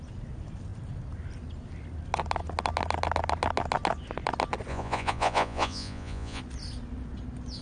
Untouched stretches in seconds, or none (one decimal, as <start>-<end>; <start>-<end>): 0.0-4.7; 6.4-7.6